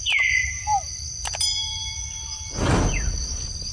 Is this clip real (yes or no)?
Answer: no